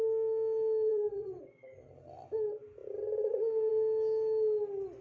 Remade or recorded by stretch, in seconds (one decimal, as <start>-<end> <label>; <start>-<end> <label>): 0.0-0.9 recorded; 0.9-1.4 remade; 1.4-5.0 recorded